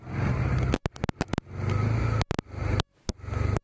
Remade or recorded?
recorded